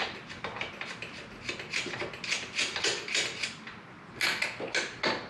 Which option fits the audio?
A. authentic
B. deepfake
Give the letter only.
A